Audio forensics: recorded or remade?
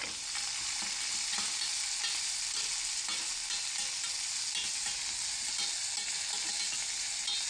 recorded